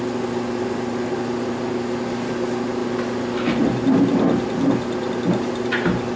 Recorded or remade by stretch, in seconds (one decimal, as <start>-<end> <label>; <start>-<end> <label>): 0.0-6.2 recorded